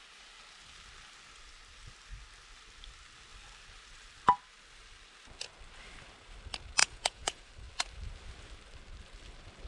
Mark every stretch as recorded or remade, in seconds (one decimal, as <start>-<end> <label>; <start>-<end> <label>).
0.0-6.8 recorded; 6.8-7.5 remade; 7.5-9.7 recorded